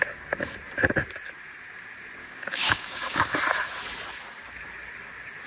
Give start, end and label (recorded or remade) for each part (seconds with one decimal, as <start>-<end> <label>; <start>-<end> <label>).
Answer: 0.0-2.2 recorded; 2.2-3.3 remade; 3.3-5.5 recorded